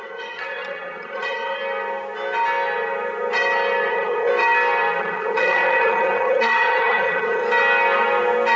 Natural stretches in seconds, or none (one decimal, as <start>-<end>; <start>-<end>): 1.6-3.9; 4.3-5.0; 7.4-8.6